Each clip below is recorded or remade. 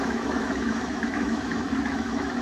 remade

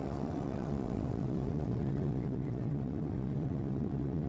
remade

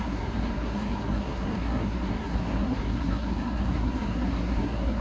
remade